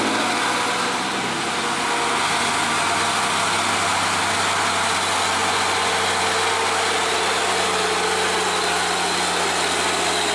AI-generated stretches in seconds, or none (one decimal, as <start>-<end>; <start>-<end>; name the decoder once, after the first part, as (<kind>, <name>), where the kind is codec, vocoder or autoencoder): 5.4-5.9 (vocoder, Vocos)